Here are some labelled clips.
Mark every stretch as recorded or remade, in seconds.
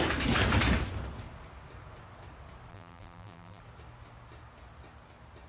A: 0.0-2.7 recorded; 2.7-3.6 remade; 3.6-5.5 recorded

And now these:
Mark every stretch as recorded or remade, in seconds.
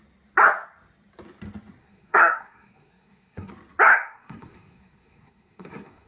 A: 0.0-1.8 recorded; 1.8-3.5 remade; 3.5-3.9 recorded; 3.9-6.1 remade